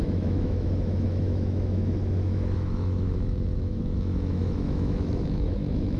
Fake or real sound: fake